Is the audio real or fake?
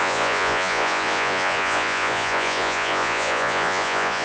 fake